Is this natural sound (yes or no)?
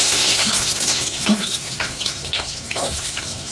no